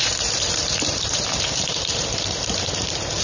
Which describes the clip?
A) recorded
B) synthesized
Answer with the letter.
B